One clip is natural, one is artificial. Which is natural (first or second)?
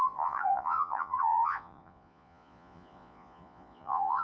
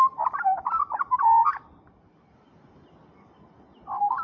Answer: second